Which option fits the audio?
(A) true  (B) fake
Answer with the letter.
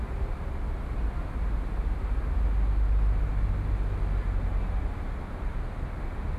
A